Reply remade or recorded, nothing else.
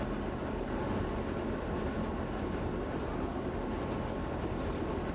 recorded